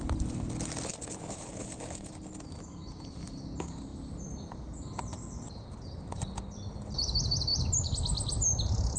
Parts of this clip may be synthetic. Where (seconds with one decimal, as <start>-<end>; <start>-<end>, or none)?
0.9-2.1

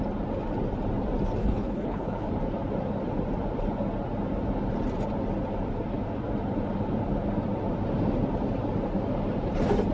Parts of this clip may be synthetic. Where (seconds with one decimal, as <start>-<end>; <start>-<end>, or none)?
1.4-2.3

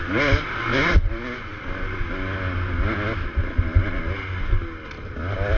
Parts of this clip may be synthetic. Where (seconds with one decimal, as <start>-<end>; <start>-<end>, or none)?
none

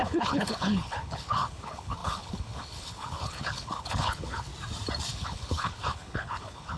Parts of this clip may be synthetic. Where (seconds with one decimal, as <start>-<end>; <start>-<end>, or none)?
0.0-4.5; 5.1-6.8

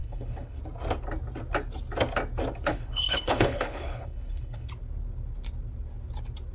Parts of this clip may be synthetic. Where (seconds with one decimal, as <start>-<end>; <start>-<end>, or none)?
0.0-0.6; 2.7-4.7

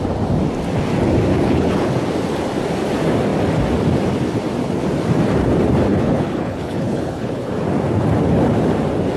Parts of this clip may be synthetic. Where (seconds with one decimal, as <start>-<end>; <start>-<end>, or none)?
1.3-1.9; 5.9-7.5

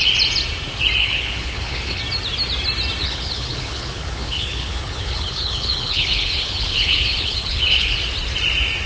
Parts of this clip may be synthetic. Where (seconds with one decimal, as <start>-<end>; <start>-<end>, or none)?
1.0-2.0; 3.0-8.0